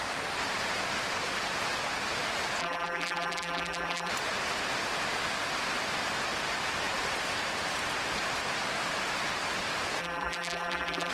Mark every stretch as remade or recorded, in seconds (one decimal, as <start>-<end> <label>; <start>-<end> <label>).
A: 0.0-2.6 recorded; 2.6-4.1 remade; 4.1-10.0 recorded; 10.0-11.1 remade